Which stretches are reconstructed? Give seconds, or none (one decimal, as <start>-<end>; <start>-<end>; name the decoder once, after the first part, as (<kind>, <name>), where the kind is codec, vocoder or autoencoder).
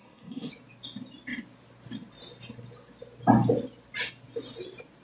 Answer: 0.0-0.5 (codec, SNAC)